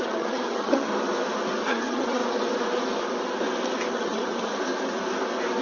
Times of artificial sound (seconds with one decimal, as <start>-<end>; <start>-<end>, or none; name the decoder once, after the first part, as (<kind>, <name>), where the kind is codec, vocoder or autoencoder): 0.0-0.9 (vocoder, HiFi-GAN); 1.7-2.2; 3.9-4.5

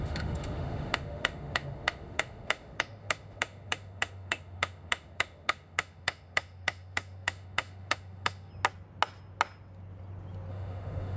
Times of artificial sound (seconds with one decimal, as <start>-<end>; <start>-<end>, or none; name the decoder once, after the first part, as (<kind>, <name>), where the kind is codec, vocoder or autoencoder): 0.0-8.5 (autoencoder, DAC-VAE); 10.5-11.2

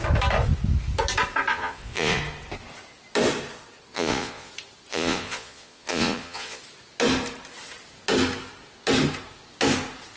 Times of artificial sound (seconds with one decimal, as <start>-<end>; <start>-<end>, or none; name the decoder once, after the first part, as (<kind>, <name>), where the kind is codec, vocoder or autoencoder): 1.5-2.2 (vocoder, Vocos); 3.9-4.5; 4.9-6.6

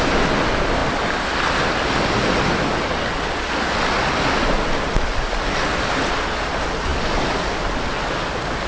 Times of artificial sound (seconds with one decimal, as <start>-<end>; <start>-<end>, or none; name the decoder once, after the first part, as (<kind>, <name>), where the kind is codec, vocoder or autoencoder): none

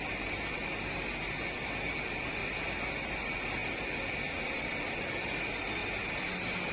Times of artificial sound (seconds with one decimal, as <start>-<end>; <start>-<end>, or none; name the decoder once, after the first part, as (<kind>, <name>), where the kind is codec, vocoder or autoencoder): 0.0-0.6 (vocoder, BigVGAN v2); 1.9-2.4; 2.9-3.6; 4.8-5.8

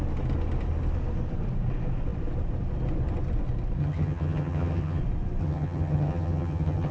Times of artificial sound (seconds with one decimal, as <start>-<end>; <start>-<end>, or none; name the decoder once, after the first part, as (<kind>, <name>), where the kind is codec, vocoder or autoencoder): 3.8-5.0 (vocoder, HiFi-GAN); 5.4-6.9